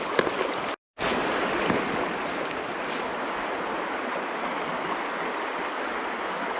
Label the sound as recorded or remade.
recorded